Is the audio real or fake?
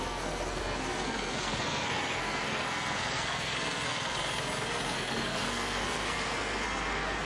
fake